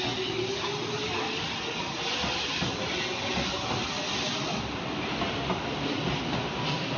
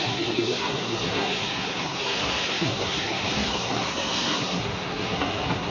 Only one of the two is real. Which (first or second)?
first